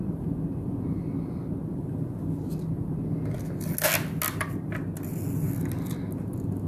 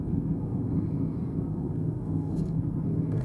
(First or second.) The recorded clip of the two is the first